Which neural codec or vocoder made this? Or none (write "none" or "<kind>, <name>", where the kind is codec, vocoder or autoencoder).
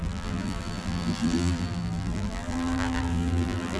vocoder, BigVGAN v2